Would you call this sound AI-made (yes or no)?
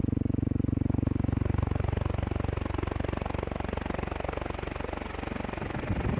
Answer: no